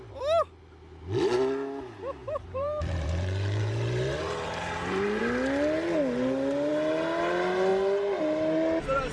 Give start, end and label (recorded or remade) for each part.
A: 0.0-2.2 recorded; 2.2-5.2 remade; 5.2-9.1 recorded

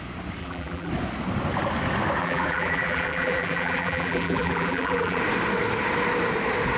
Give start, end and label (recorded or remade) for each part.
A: 0.0-0.4 recorded; 0.4-0.9 remade; 0.9-2.2 recorded; 2.2-5.2 remade; 5.2-6.8 recorded

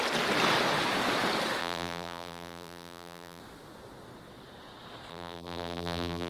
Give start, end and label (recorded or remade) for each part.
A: 0.0-1.6 recorded; 1.6-3.4 remade; 3.4-5.1 recorded; 5.1-6.3 remade

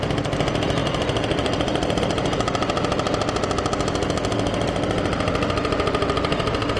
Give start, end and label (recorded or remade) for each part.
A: 0.0-6.8 recorded

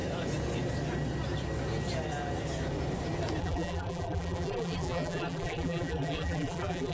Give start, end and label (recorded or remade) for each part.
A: 0.0-3.4 recorded; 3.4-6.9 remade

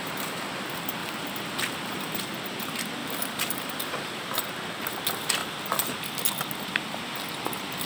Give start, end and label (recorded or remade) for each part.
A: 0.0-1.0 recorded; 1.0-2.2 remade; 2.2-3.0 recorded; 3.0-4.0 remade; 4.0-7.9 recorded

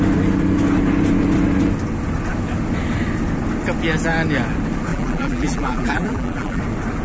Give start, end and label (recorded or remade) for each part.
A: 0.0-4.9 recorded; 4.9-6.6 remade; 6.6-7.0 recorded

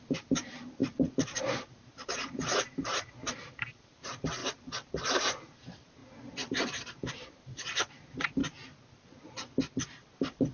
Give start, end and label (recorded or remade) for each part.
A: 0.0-4.4 remade; 4.4-5.4 recorded; 5.4-6.0 remade; 6.0-6.5 recorded; 6.5-8.4 remade; 8.4-9.9 recorded; 9.9-10.5 remade